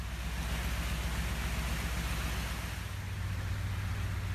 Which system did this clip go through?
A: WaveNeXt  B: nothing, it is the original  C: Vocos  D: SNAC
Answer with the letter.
B